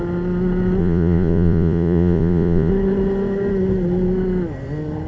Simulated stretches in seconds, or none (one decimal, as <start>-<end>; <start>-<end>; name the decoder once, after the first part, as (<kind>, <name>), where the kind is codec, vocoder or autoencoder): 0.8-2.7 (vocoder, Vocos)